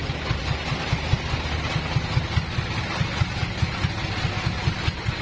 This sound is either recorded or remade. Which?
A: recorded